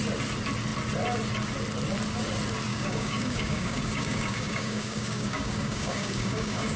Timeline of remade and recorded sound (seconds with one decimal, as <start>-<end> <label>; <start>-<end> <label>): 0.0-2.7 recorded; 2.7-6.8 remade